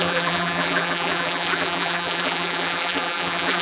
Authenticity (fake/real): fake